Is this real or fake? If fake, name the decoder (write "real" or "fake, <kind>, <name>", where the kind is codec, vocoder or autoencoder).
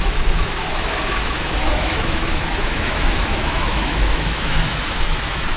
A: fake, autoencoder, DAC-VAE